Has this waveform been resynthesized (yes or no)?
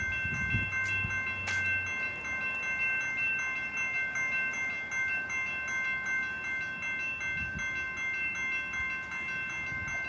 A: no